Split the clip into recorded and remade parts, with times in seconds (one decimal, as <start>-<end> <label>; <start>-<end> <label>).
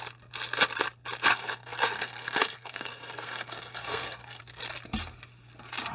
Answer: 0.0-1.3 recorded; 1.3-4.4 remade; 4.4-5.9 recorded